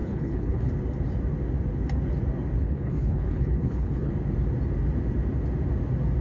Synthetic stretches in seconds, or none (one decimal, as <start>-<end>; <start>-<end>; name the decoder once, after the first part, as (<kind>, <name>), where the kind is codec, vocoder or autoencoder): 0.0-0.7 (codec, HILCodec); 2.6-4.1